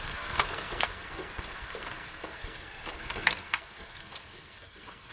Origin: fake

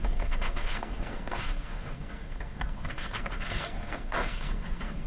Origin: fake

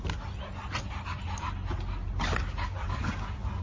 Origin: real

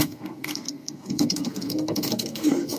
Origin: fake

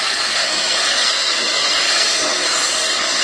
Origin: fake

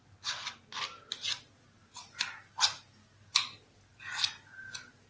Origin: real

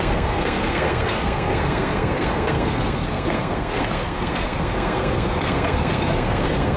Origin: fake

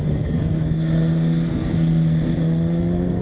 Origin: fake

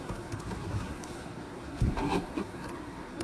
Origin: fake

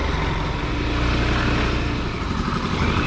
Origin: real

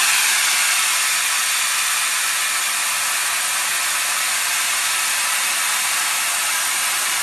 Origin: real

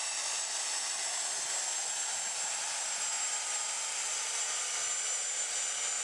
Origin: real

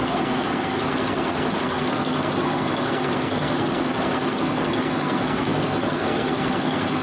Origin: fake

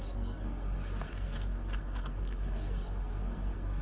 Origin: fake